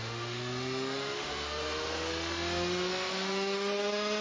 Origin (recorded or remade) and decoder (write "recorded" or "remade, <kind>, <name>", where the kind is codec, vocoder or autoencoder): remade, autoencoder, DAC-VAE